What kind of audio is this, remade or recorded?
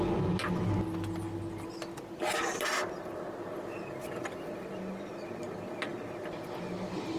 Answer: recorded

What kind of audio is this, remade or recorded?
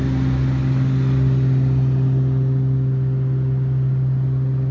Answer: recorded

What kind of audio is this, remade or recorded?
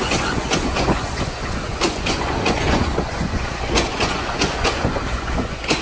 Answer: remade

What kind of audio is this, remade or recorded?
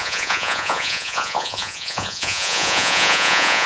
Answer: remade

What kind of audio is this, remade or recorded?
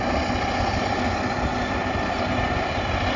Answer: recorded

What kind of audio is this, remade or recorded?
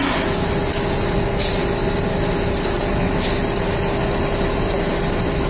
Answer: recorded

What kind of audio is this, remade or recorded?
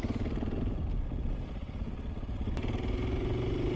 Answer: recorded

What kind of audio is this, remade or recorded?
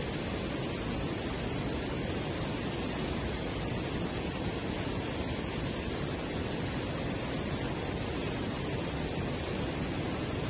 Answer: recorded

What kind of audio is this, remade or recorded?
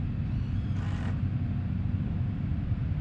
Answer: recorded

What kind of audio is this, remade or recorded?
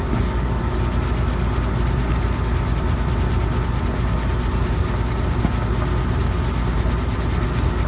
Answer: recorded